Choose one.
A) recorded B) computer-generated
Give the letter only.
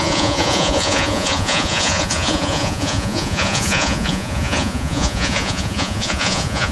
B